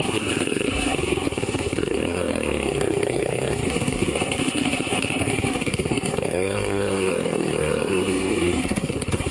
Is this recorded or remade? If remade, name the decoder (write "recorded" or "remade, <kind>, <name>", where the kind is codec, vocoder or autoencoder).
remade, codec, SNAC